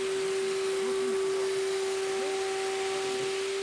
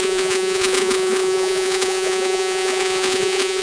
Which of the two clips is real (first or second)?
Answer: first